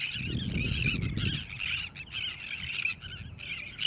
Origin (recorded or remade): recorded